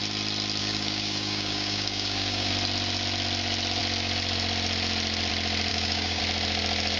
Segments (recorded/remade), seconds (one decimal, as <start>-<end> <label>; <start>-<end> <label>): 0.0-0.6 recorded; 0.6-2.5 remade; 2.5-5.7 recorded; 5.7-6.2 remade; 6.2-7.0 recorded